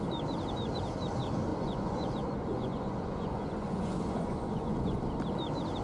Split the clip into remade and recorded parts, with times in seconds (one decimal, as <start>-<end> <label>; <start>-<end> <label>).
0.0-1.5 recorded; 1.5-5.0 remade; 5.0-5.8 recorded

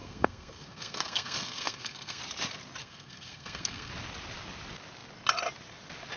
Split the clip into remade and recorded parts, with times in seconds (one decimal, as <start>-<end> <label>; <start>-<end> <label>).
0.0-2.2 remade; 2.2-2.8 recorded; 2.8-3.9 remade; 3.9-6.2 recorded